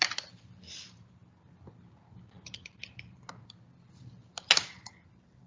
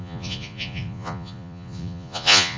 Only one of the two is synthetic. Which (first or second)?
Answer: second